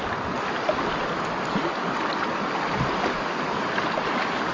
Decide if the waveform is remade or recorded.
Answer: recorded